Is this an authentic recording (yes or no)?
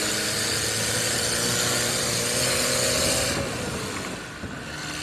yes